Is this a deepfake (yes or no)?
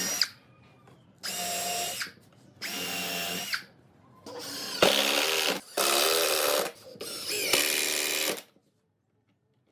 no